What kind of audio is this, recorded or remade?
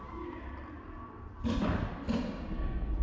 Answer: recorded